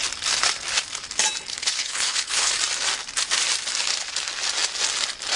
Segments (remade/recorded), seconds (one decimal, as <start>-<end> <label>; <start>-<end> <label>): 0.0-1.5 recorded; 1.5-2.5 remade; 2.5-5.4 recorded